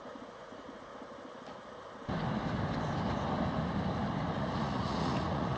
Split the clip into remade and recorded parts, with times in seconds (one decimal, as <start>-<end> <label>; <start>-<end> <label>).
0.0-0.9 remade; 0.9-4.3 recorded; 4.3-5.6 remade